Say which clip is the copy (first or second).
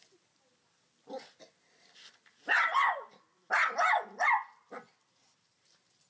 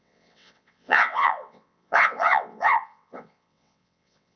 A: second